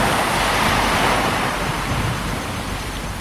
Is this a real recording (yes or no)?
yes